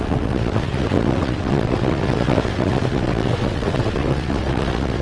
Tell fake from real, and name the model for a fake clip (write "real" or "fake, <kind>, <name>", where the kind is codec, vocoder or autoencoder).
fake, vocoder, WaveNeXt